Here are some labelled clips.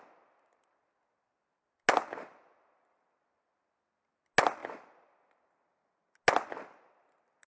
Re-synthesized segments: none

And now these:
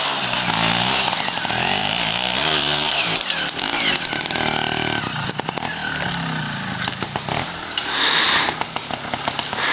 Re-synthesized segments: 1.8-5.3